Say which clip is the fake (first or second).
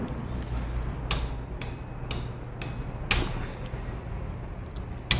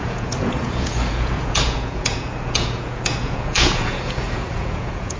second